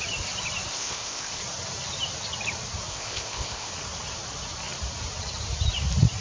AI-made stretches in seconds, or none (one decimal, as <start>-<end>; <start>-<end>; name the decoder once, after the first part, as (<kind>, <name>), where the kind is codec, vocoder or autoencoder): 0.7-1.4 (codec, ZipCodec); 2.9-3.7